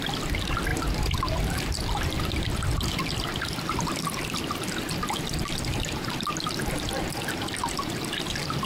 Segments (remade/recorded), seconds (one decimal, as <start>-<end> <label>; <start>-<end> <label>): 0.0-8.7 recorded